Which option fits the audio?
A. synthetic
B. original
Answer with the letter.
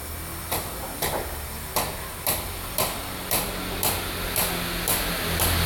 B